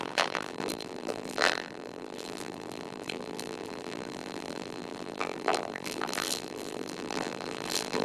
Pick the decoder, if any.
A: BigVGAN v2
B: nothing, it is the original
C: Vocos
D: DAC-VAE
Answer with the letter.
A